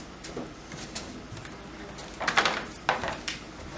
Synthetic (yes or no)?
no